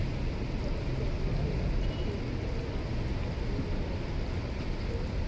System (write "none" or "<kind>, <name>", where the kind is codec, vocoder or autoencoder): none